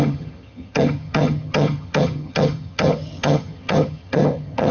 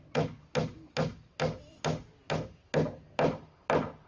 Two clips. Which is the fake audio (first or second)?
first